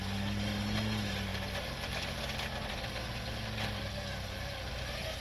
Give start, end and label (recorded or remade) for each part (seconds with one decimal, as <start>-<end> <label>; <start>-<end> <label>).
0.0-5.2 recorded